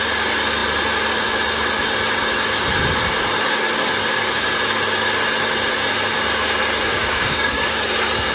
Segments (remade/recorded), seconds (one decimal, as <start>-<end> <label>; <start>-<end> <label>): 0.0-6.9 recorded; 6.9-7.7 remade; 7.7-8.3 recorded

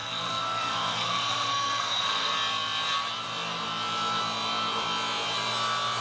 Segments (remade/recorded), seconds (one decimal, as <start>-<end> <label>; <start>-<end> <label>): 0.0-2.3 remade; 2.3-6.0 recorded

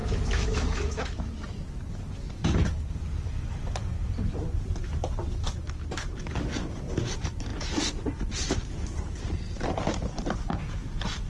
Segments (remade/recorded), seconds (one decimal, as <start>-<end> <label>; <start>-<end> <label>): 0.0-1.3 remade; 1.3-11.3 recorded

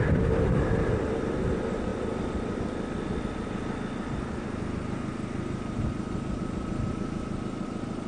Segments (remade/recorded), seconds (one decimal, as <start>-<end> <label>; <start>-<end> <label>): 0.0-8.1 recorded

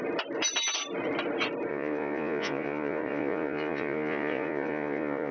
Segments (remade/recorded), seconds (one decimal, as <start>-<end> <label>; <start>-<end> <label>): 0.0-1.7 recorded; 1.7-5.3 remade

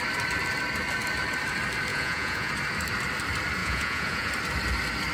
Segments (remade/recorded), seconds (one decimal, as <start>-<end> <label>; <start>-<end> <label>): 0.0-1.9 recorded; 1.9-2.5 remade; 2.5-3.6 recorded; 3.6-4.3 remade; 4.3-5.1 recorded